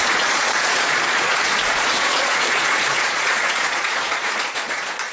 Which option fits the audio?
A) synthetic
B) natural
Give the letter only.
A